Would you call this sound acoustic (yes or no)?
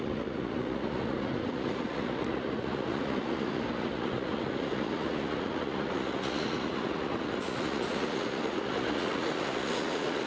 no